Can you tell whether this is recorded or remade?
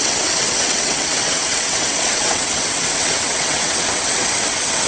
remade